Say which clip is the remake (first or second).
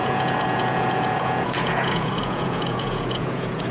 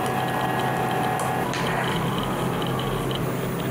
first